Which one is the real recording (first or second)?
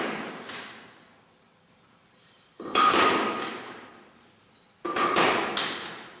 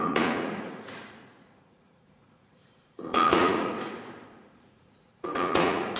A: first